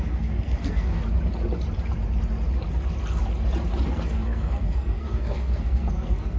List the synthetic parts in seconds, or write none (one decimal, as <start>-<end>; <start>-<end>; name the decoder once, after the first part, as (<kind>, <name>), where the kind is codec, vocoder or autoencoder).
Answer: 0.0-1.0 (codec, SNAC); 3.8-6.4